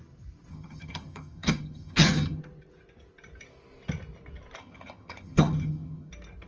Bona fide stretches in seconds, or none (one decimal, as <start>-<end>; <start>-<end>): 0.0-0.5; 2.4-4.6; 6.1-6.5